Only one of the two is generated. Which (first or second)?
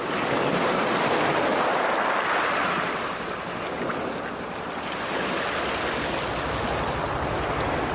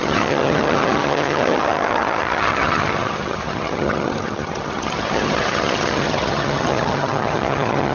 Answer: second